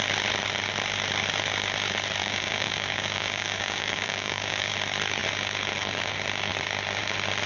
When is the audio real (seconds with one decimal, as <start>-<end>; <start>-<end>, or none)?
0.0-2.2; 4.7-7.5